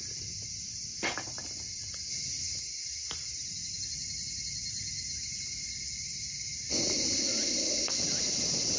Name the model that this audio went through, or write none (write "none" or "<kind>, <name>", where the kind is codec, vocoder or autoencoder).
none